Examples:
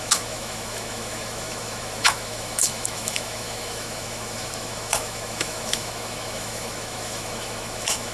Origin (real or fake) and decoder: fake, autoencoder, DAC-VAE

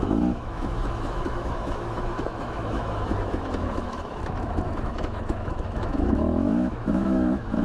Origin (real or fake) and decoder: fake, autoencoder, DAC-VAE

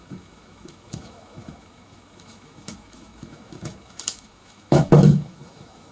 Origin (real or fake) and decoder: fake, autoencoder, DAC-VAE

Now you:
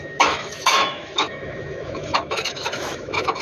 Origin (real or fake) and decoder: fake, autoencoder, DAC-VAE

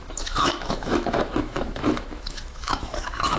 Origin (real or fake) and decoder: fake, autoencoder, DAC-VAE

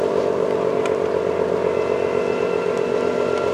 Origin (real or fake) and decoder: real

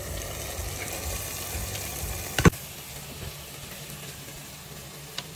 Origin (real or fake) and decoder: real